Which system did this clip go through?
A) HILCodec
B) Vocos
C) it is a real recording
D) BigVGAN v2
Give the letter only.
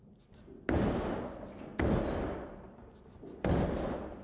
C